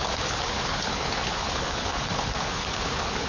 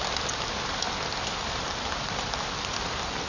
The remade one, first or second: first